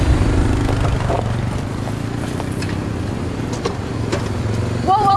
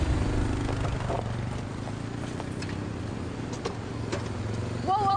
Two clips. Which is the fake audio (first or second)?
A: first